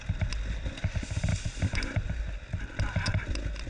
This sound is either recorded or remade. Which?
recorded